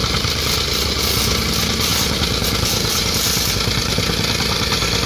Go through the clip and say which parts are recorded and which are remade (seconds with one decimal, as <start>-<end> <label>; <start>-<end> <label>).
0.0-5.1 recorded

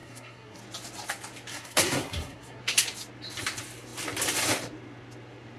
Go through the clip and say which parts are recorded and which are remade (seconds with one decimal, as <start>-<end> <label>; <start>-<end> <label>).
0.0-0.6 remade; 0.6-1.5 recorded; 1.5-2.6 remade; 2.6-5.6 recorded

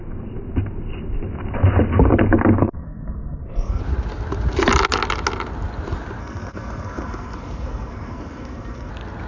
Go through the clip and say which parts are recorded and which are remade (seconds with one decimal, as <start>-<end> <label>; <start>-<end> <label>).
0.0-2.6 recorded; 2.6-3.8 remade; 3.8-6.2 recorded; 6.2-8.9 remade; 8.9-9.3 recorded

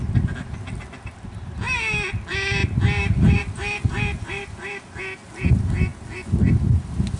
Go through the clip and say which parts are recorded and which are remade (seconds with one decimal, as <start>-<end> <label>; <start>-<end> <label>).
0.0-7.2 recorded

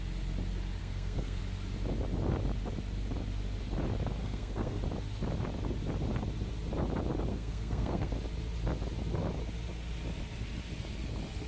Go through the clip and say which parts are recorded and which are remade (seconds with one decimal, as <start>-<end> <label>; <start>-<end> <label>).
0.0-0.8 recorded; 0.8-1.4 remade; 1.4-4.2 recorded; 4.2-4.8 remade; 4.8-7.3 recorded; 7.3-8.1 remade; 8.1-11.5 recorded

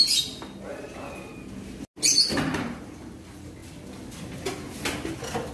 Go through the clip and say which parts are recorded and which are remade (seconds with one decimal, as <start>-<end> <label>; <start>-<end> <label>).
0.0-5.5 recorded

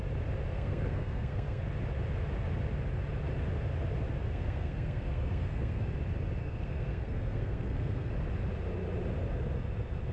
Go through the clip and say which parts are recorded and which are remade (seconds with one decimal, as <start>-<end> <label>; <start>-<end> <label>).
0.0-0.5 recorded; 0.5-1.6 remade; 1.6-4.2 recorded; 4.2-5.8 remade; 5.8-6.4 recorded; 6.4-8.1 remade; 8.1-10.1 recorded